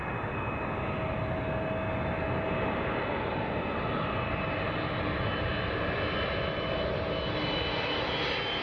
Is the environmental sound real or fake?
real